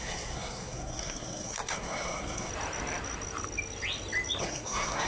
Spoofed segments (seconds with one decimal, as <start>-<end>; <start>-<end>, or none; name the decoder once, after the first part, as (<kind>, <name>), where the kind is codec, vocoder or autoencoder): 0.0-2.5 (codec, SNAC); 4.4-5.1